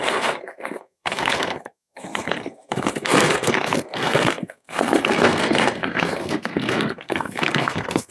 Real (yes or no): no